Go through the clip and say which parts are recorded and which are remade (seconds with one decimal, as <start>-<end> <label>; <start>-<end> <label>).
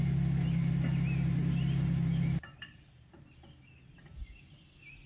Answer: 0.0-5.1 recorded